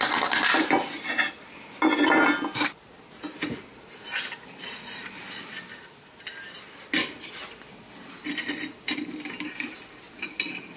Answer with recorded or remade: recorded